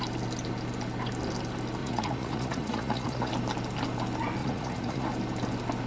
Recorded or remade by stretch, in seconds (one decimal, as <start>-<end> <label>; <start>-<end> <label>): 0.0-1.8 recorded; 1.8-3.3 remade; 3.3-4.4 recorded; 4.4-5.1 remade; 5.1-5.9 recorded